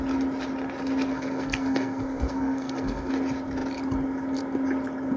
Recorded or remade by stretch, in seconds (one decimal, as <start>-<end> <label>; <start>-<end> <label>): 0.0-1.1 recorded; 1.1-3.1 remade; 3.1-5.2 recorded